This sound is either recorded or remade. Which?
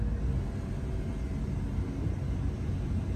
recorded